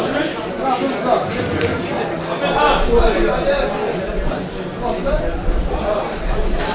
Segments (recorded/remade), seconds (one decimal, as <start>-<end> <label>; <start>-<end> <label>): 0.0-6.7 recorded